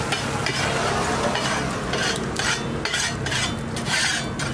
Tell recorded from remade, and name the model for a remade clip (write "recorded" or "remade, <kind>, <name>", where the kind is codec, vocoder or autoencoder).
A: recorded